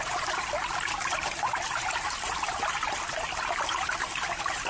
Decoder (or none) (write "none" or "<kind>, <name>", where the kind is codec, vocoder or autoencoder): none